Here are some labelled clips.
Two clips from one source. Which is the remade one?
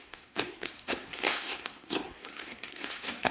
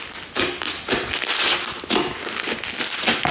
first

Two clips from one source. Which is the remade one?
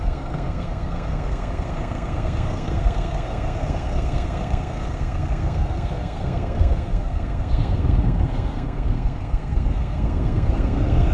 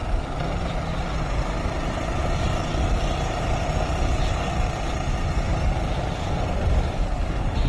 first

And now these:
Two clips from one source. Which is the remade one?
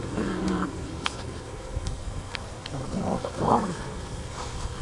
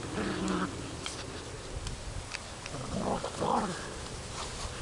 first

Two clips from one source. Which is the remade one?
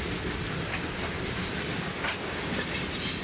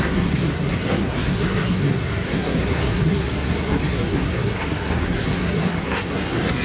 second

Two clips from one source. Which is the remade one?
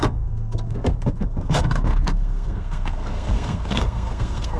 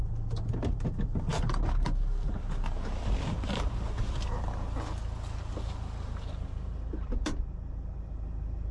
first